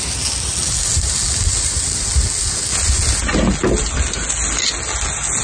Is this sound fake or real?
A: real